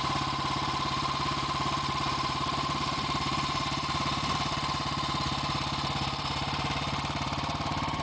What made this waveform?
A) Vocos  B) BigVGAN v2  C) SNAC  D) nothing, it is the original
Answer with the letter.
B